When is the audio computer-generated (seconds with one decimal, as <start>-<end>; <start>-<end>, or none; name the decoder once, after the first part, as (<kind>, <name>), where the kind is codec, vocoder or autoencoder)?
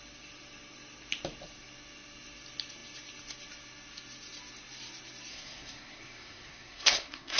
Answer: 5.3-7.4 (codec, SNAC)